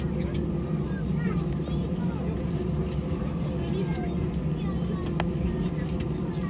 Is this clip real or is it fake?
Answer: real